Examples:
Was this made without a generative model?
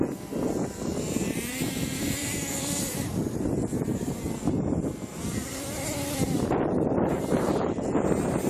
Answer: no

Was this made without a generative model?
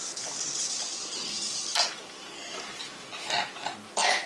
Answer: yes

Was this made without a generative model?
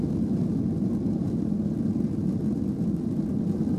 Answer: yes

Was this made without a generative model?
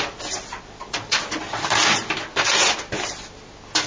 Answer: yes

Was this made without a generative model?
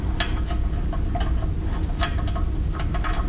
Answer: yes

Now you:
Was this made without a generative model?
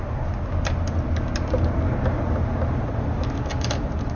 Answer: yes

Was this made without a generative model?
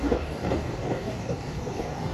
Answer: no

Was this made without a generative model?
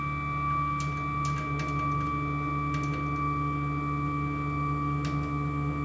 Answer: yes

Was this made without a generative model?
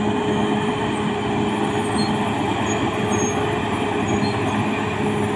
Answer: yes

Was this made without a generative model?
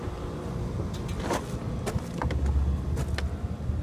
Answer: yes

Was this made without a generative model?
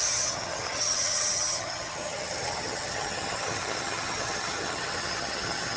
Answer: no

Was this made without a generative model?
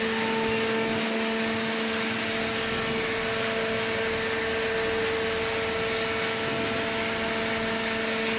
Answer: yes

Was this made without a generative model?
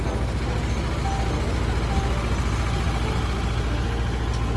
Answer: yes